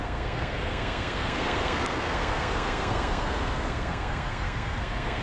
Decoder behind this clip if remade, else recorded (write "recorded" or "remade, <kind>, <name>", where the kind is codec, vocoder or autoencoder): remade, codec, SNAC